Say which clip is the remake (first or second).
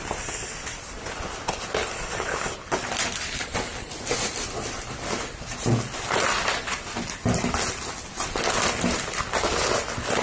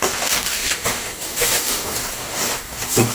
second